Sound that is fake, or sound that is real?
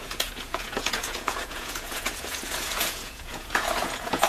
fake